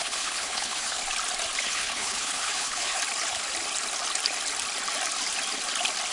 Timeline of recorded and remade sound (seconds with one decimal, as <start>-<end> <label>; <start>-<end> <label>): 0.0-1.0 remade; 1.0-1.6 recorded; 1.6-3.0 remade; 3.0-6.1 recorded